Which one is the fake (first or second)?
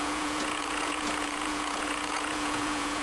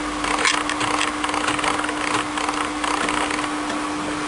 first